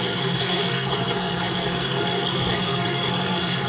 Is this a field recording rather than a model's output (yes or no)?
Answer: no